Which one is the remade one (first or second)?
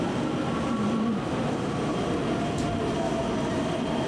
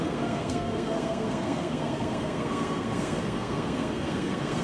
second